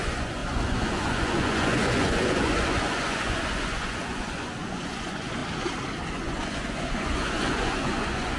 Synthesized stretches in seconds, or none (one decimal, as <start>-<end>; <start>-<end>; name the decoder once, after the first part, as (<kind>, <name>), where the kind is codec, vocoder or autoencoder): 0.0-5.4 (vocoder, Vocos); 6.1-8.4